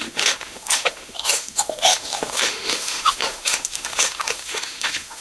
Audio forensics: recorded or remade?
remade